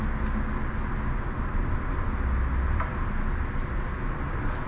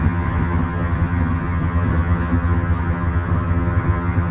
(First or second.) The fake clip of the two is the second